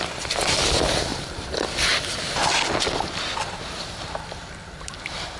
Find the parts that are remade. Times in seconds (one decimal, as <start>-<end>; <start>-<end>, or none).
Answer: none